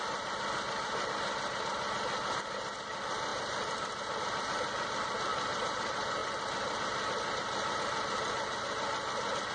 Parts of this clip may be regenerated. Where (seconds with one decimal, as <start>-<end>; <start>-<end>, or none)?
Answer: 5.3-5.8